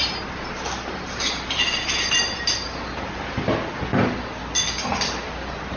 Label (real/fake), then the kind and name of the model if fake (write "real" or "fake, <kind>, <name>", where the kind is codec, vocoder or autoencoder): real